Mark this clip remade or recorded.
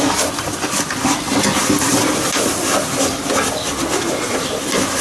recorded